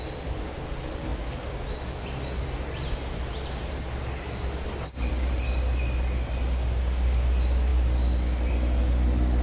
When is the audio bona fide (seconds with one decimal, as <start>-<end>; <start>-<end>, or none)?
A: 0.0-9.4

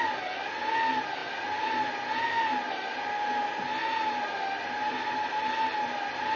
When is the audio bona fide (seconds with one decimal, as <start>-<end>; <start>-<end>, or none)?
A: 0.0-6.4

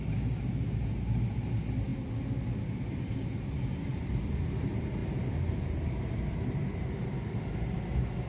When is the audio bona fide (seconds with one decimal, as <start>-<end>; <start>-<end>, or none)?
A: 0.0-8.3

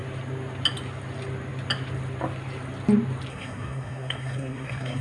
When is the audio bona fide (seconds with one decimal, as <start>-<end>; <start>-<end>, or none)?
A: 0.0-3.3

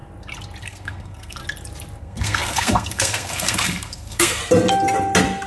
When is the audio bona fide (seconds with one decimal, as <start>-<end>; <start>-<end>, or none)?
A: 0.0-0.6; 1.4-2.0; 4.4-5.5

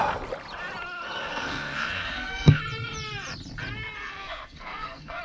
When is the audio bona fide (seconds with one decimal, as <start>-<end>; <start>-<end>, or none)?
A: 0.0-1.3; 2.6-4.0